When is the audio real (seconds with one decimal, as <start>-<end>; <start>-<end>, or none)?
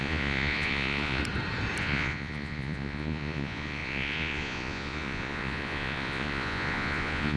1.2-1.8